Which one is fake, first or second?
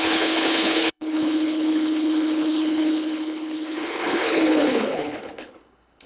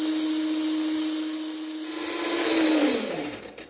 first